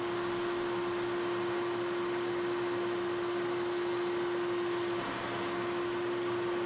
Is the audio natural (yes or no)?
yes